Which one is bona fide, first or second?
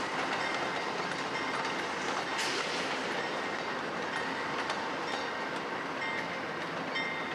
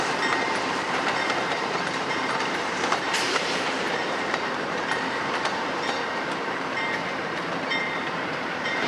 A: first